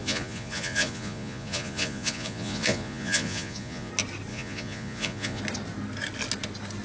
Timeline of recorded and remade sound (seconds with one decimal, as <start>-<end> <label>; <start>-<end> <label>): 0.0-3.9 remade; 3.9-4.3 recorded; 4.3-5.4 remade; 5.4-6.8 recorded